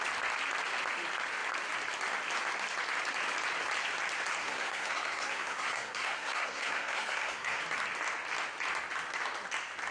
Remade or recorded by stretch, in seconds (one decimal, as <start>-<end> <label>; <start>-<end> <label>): 0.0-4.4 recorded; 4.4-7.6 remade; 7.6-9.9 recorded